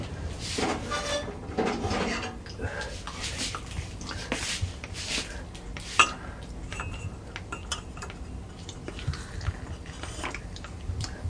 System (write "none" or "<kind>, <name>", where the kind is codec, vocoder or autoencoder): none